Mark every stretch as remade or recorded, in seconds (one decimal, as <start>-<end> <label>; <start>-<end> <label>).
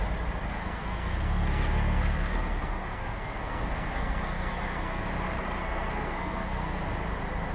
0.0-0.5 recorded; 0.5-5.0 remade; 5.0-5.6 recorded; 5.6-6.8 remade; 6.8-7.5 recorded